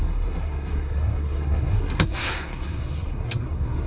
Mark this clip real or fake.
fake